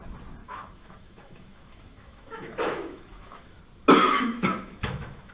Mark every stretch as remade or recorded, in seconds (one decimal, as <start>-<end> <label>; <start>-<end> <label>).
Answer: 0.0-0.4 recorded; 0.4-3.6 remade; 3.6-4.0 recorded; 4.0-5.3 remade

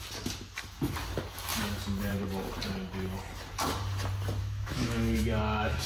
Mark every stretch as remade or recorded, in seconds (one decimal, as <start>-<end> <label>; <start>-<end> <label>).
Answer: 0.0-4.4 recorded; 4.4-5.9 remade

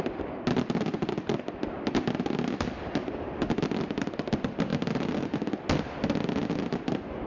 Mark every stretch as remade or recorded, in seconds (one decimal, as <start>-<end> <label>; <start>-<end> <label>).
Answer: 0.0-7.3 recorded

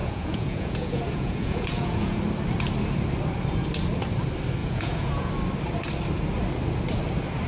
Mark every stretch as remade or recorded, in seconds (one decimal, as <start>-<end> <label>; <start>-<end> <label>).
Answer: 0.0-2.2 remade; 2.2-4.6 recorded; 4.6-5.3 remade; 5.3-7.5 recorded

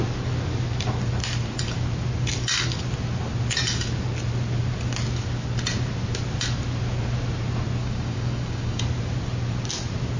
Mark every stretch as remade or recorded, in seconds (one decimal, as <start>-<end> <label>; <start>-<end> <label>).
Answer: 0.0-7.8 recorded; 7.8-8.8 remade; 8.8-10.2 recorded

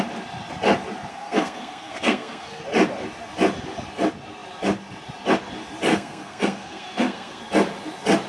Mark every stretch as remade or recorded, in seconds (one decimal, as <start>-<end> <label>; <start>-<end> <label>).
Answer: 0.0-1.1 recorded; 1.1-2.6 remade; 2.6-5.9 recorded; 5.9-7.4 remade; 7.4-8.3 recorded